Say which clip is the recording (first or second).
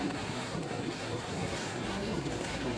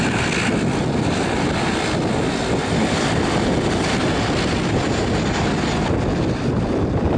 second